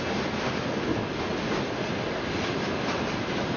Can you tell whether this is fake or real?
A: real